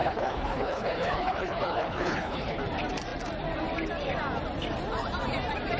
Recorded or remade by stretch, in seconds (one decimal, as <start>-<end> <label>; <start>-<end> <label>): 0.0-2.6 remade; 2.6-5.8 recorded